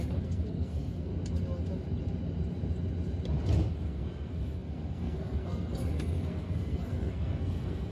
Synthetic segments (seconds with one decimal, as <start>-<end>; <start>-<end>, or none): 0.0-1.1; 3.7-7.9